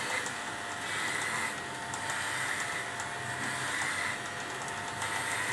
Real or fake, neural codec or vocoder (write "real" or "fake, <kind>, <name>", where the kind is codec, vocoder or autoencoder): real